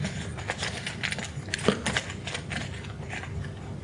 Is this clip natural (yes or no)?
yes